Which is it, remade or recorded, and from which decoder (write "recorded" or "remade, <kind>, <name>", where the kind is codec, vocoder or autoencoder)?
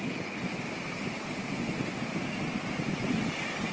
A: recorded